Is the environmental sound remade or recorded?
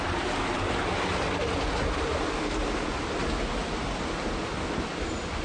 recorded